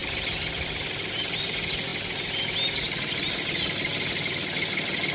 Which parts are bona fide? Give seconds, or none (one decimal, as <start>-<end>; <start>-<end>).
0.0-5.1